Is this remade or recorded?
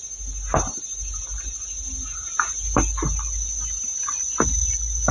recorded